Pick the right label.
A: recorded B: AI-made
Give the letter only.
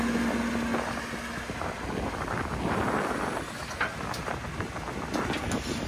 A